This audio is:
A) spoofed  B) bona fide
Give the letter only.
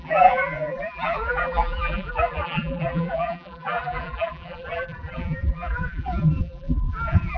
A